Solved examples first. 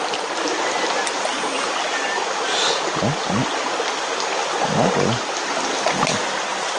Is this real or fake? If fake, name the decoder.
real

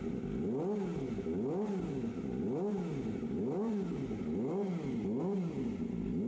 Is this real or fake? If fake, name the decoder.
real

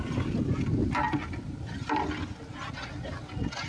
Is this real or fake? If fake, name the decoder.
real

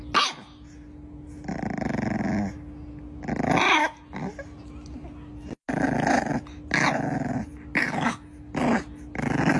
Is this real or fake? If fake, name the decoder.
real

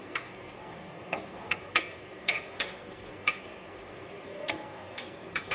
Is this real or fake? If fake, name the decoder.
fake, codec, SNAC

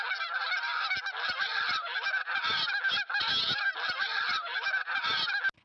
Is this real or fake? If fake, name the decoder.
real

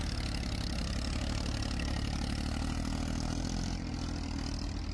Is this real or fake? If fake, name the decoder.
real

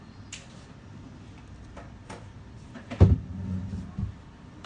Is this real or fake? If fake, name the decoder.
real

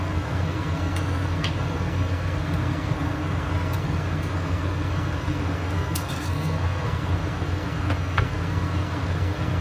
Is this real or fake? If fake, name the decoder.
fake, codec, SNAC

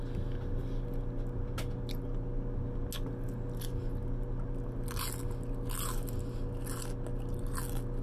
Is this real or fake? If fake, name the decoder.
real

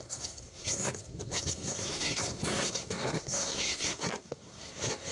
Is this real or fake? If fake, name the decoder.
fake, codec, SNAC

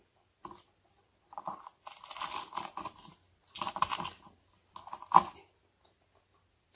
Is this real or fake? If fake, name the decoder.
real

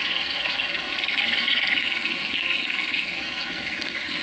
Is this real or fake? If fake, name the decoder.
fake, codec, SNAC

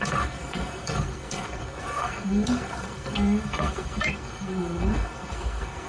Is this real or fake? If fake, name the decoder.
fake, codec, SNAC